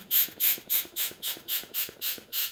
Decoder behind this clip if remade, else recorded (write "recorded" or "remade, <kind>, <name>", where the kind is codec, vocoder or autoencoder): remade, autoencoder, DAC-VAE